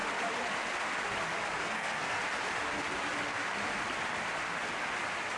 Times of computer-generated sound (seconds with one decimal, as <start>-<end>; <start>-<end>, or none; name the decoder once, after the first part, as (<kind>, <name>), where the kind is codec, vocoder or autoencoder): 1.6-2.2 (codec, SNAC)